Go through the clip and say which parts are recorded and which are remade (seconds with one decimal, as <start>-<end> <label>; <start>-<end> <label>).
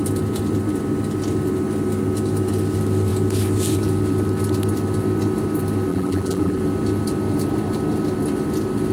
0.0-5.9 recorded; 5.9-6.6 remade; 6.6-8.9 recorded